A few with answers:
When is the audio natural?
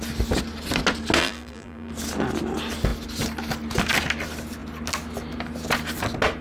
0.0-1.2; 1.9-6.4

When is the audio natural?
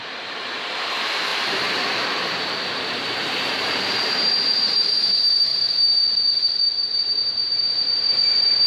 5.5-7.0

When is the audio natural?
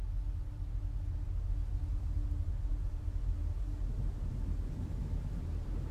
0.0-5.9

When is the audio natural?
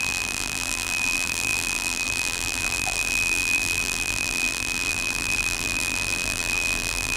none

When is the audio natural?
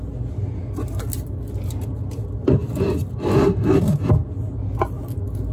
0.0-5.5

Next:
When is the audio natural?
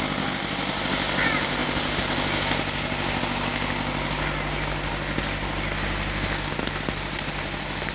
0.0-7.9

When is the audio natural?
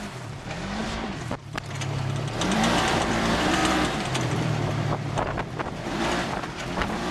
none